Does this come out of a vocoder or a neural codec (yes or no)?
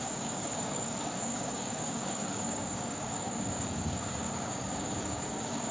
yes